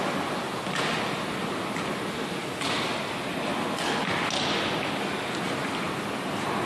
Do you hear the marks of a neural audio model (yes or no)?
no